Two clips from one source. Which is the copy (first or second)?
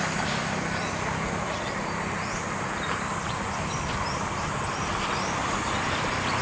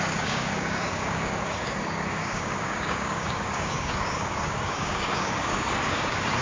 second